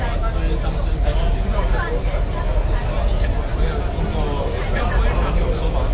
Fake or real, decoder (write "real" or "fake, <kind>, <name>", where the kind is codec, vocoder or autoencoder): real